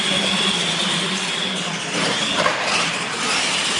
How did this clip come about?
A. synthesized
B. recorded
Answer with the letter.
B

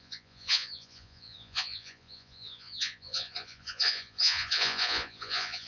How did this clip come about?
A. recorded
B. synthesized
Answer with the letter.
B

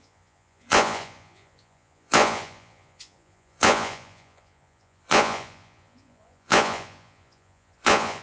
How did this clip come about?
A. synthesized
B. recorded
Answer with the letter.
A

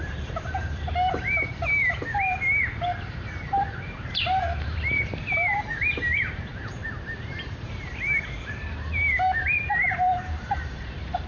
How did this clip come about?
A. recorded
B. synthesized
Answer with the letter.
B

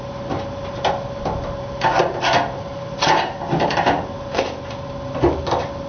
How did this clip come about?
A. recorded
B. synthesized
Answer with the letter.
B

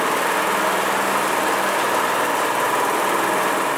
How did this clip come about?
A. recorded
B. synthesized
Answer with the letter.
A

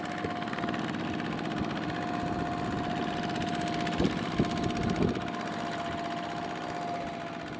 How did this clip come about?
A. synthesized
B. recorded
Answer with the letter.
B